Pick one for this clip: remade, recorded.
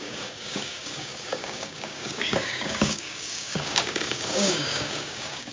remade